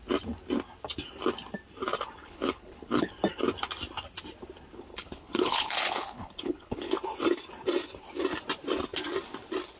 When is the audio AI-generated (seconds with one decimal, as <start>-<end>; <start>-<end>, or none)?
2.2-3.1; 4.9-6.9